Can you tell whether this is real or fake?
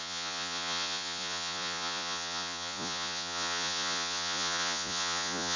fake